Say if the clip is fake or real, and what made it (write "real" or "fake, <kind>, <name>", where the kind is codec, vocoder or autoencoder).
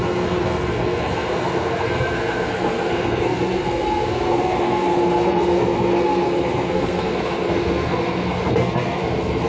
fake, codec, SNAC